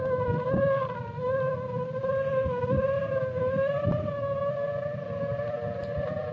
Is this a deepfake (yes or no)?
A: no